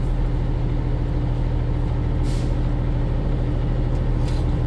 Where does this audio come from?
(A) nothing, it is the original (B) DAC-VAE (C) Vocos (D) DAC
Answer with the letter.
A